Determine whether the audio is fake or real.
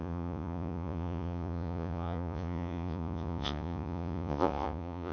fake